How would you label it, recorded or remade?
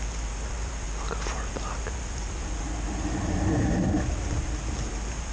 remade